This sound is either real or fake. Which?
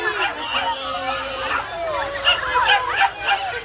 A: real